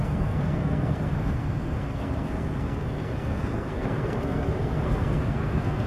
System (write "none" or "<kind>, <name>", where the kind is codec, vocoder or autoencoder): codec, SNAC